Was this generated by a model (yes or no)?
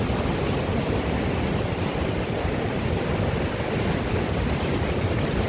no